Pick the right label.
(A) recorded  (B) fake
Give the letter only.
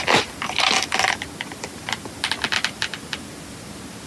A